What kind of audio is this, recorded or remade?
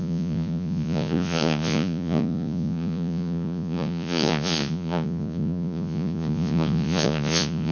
remade